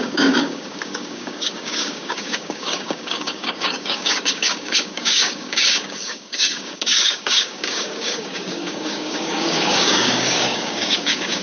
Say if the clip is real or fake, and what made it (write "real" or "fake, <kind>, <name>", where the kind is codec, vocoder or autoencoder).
fake, codec, DAC